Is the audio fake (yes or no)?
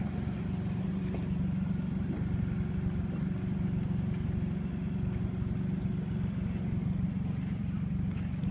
no